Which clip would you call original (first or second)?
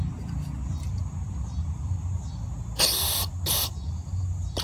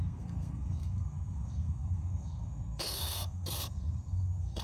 first